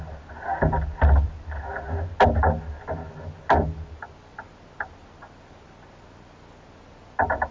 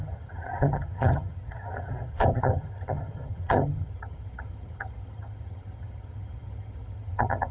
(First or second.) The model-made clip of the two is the second